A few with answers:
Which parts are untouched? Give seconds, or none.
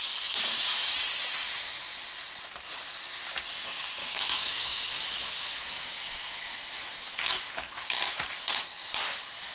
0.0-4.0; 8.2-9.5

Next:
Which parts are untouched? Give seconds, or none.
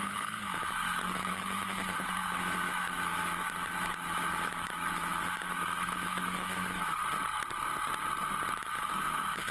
7.0-8.5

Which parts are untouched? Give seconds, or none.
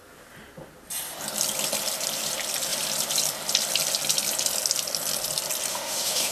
0.0-5.7